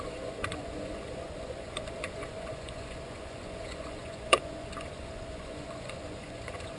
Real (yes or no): no